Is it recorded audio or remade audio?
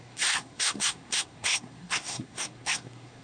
remade